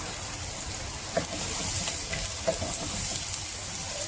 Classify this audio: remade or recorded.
recorded